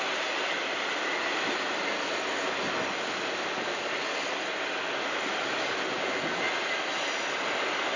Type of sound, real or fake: real